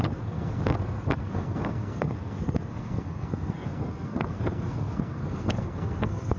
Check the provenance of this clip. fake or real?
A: fake